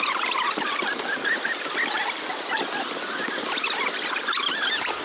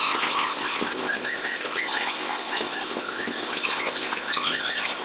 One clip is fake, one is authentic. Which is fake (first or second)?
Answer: second